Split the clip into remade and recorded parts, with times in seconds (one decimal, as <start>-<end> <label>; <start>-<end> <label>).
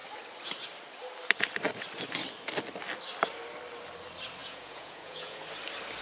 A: 0.0-4.4 recorded; 4.4-5.4 remade; 5.4-6.0 recorded